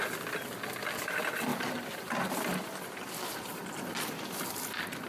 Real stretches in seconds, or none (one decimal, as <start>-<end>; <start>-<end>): 0.0-5.1